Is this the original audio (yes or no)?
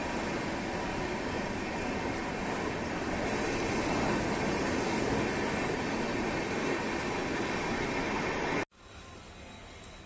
yes